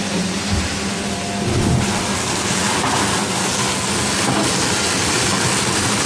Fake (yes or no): no